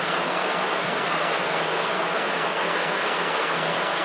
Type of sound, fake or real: fake